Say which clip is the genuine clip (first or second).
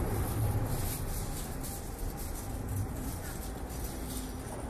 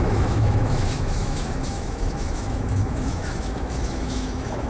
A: first